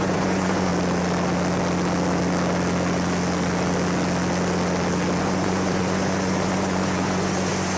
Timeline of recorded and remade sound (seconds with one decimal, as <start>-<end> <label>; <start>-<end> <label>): 0.0-0.7 remade; 0.7-5.2 recorded; 5.2-7.8 remade